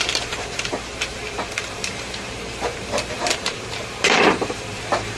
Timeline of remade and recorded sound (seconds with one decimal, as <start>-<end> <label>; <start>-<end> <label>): 0.0-5.2 remade